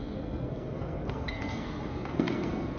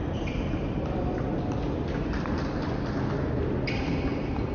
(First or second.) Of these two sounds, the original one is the second